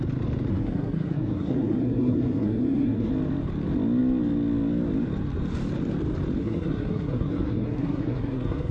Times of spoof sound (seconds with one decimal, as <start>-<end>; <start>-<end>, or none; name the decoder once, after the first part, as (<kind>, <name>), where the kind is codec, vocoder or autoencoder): 0.5-3.1 (codec, SNAC); 6.4-8.7